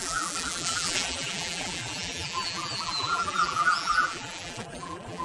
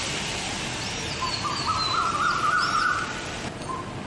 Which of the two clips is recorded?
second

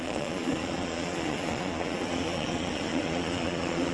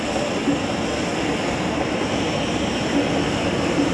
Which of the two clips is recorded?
second